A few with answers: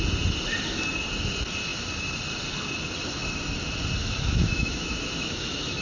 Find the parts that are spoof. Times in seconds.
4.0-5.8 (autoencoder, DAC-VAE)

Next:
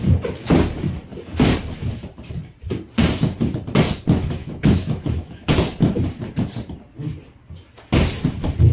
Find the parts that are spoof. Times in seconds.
4.4-5.5 (autoencoder, DAC-VAE)

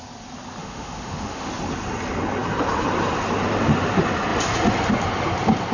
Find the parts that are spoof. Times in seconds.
0.6-1.5 (autoencoder, DAC-VAE)

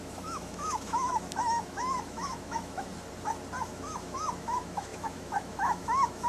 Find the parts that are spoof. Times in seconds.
0.0-2.9 (autoencoder, DAC-VAE); 3.6-6.3

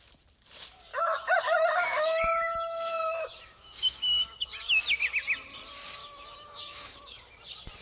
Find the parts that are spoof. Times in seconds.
0.9-4.8 (autoencoder, DAC-VAE); 6.0-7.2

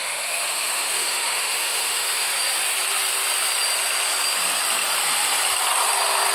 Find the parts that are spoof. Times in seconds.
0.0-2.3 (autoencoder, DAC-VAE)

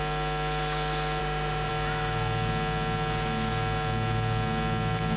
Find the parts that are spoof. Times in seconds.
1.2-1.7 (autoencoder, DAC-VAE)